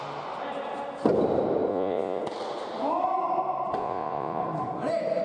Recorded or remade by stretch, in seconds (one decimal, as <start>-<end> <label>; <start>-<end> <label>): 0.0-1.7 recorded; 1.7-2.2 remade; 2.2-3.8 recorded; 3.8-4.4 remade; 4.4-5.2 recorded